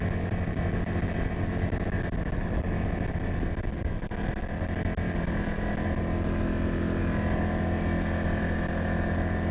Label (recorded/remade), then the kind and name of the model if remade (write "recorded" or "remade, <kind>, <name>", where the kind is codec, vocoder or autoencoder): recorded